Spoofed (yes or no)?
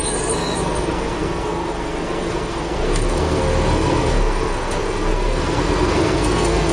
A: yes